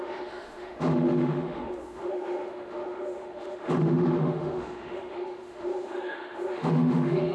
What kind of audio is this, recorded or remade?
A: remade